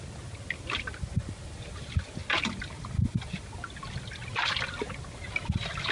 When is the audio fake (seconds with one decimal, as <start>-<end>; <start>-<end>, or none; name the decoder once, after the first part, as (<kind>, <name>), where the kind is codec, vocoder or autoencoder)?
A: none